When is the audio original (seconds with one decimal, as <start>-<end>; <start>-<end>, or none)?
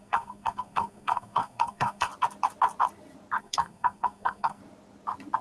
2.1-3.4; 4.6-5.4